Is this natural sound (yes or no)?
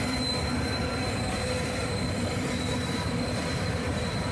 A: no